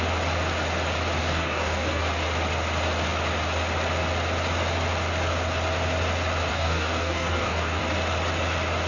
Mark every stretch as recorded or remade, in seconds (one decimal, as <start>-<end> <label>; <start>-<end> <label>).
0.0-1.2 recorded; 1.2-2.0 remade; 2.0-6.5 recorded; 6.5-7.8 remade; 7.8-8.9 recorded